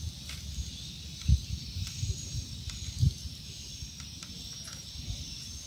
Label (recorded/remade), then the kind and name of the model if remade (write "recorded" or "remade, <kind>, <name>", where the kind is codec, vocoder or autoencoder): recorded